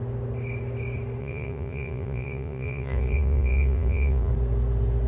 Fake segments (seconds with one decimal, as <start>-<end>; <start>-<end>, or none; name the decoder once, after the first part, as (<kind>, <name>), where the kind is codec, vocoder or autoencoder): 1.2-4.3 (vocoder, Vocos)